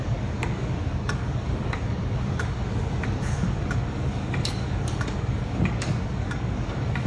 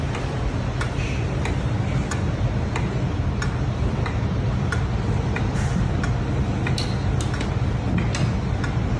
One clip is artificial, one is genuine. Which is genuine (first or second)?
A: second